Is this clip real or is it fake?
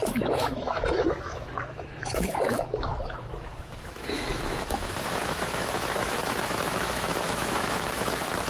fake